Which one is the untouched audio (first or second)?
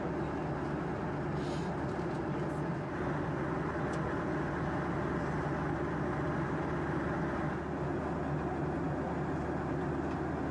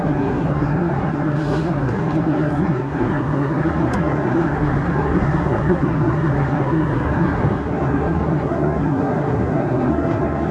first